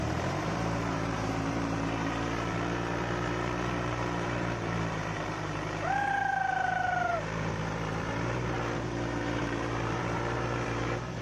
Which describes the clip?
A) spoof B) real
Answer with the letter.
A